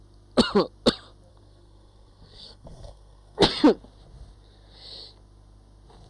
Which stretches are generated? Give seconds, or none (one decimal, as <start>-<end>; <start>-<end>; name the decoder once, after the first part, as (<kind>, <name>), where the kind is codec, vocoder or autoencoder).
1.3-3.5 (codec, SNAC)